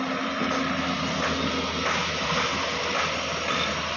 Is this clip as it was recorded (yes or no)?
yes